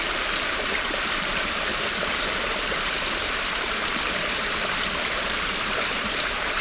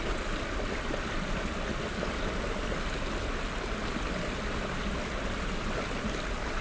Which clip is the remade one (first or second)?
first